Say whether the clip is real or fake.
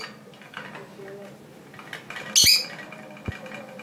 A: real